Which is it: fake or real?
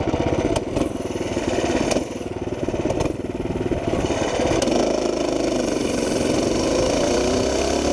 fake